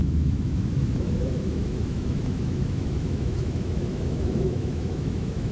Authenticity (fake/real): fake